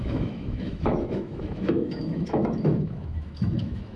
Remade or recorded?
remade